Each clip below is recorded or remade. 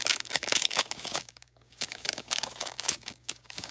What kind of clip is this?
remade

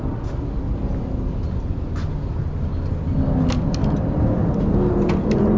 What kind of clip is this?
recorded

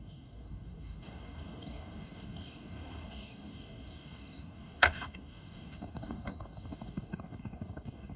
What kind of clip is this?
remade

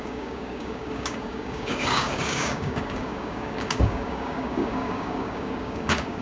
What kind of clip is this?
remade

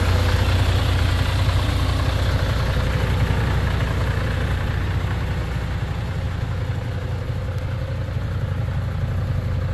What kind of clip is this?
recorded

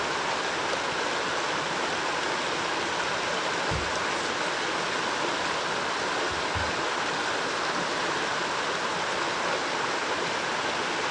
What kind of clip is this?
recorded